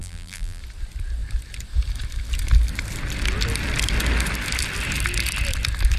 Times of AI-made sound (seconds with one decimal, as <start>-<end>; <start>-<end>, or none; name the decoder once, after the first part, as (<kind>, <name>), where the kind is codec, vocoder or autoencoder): 0.0-0.6 (vocoder, BigVGAN v2)